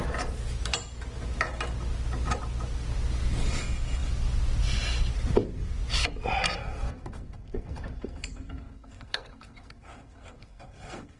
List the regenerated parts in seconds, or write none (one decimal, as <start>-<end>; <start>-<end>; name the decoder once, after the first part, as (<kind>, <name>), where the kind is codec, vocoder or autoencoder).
6.6-11.2 (codec, SNAC)